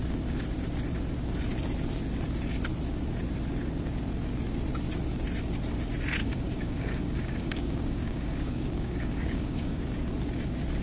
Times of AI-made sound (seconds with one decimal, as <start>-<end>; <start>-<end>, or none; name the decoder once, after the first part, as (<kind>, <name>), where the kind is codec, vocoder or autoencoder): 6.2-9.8 (codec, DAC)